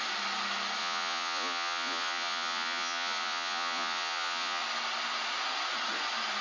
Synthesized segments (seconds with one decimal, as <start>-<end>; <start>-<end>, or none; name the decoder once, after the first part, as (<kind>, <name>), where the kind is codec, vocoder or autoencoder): 0.8-4.6 (vocoder, Vocos)